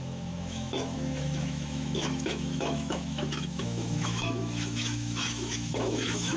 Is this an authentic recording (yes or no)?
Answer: no